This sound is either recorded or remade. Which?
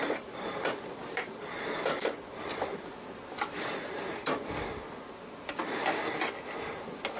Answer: recorded